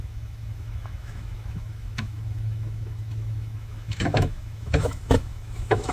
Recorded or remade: remade